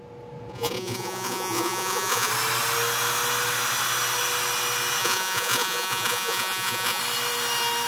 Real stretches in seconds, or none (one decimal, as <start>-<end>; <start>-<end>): 0.0-0.5; 2.3-5.0; 7.0-7.9